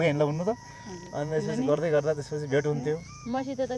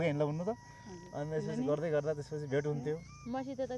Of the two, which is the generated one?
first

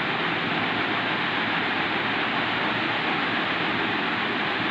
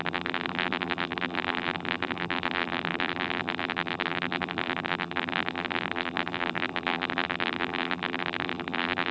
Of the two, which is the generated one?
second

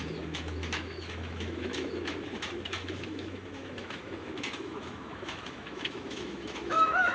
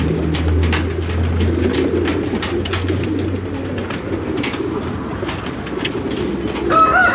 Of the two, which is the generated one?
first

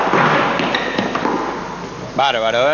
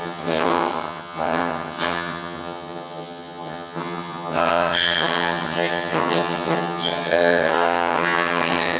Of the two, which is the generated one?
second